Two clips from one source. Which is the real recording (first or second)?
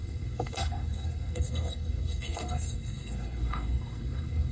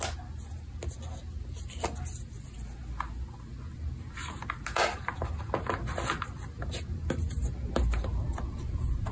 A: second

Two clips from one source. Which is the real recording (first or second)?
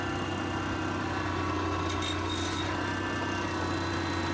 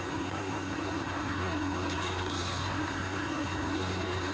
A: first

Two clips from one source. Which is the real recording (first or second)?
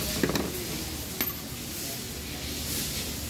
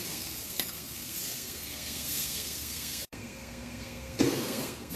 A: first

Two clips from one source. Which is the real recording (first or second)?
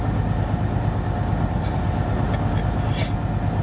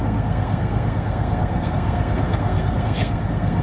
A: first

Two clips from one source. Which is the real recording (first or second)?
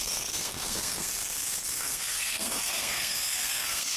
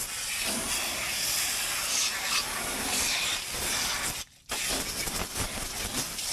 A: second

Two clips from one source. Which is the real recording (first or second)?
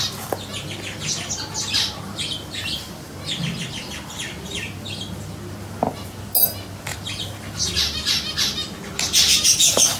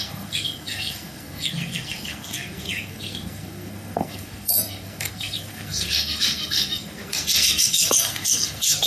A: first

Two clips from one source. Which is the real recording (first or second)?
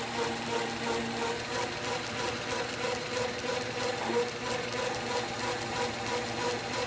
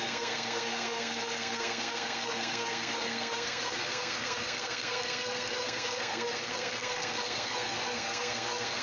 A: first